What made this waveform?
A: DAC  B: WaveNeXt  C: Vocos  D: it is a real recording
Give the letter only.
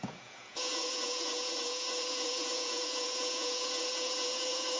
C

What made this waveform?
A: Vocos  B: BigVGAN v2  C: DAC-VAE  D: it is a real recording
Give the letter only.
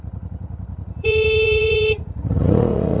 A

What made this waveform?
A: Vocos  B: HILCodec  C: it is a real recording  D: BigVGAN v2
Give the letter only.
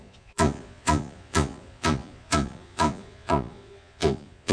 A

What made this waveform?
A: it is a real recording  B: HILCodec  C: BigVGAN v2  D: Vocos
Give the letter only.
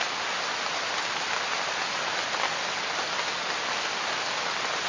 A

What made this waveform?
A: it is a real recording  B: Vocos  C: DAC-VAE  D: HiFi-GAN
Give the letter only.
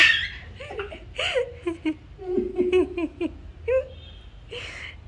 A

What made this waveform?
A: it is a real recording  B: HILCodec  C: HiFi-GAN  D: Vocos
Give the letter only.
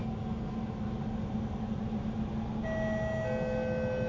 A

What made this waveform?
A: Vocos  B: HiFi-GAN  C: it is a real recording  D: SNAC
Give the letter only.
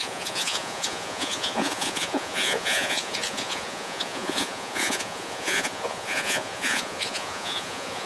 A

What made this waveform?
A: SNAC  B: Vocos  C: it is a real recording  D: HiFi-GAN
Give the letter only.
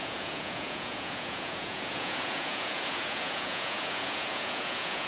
B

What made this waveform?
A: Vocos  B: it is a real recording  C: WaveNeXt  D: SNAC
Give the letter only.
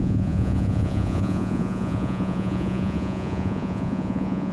A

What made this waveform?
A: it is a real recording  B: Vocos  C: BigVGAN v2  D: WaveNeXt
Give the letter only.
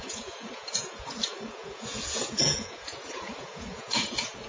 B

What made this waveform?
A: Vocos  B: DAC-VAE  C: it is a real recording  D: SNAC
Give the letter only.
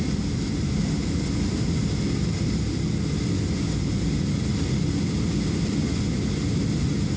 C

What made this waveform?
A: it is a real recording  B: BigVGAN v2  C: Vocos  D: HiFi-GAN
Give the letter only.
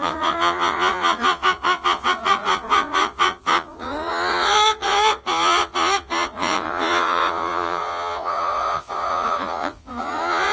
C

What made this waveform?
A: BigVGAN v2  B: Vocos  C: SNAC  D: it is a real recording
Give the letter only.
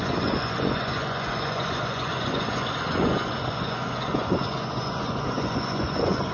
B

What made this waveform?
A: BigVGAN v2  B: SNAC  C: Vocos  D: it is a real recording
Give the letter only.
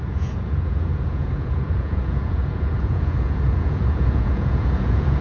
C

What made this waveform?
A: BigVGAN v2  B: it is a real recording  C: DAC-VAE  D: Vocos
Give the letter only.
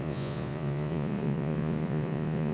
D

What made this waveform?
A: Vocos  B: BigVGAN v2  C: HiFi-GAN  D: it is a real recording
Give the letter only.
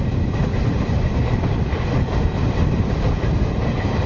D